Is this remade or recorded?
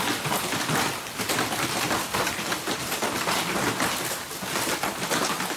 recorded